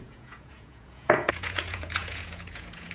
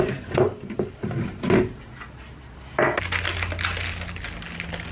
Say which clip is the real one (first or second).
second